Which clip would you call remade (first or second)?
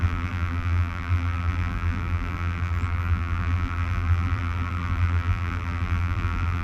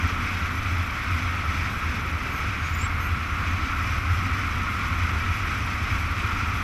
first